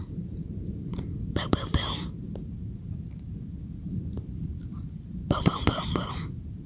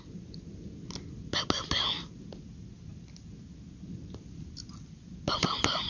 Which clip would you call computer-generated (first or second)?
first